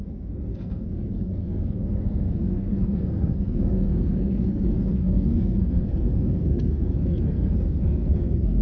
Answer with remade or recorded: remade